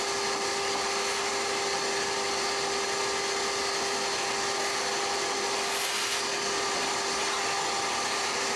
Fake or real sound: real